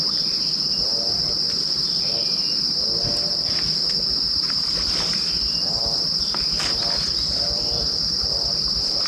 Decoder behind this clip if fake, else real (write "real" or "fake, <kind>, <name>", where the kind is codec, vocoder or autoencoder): real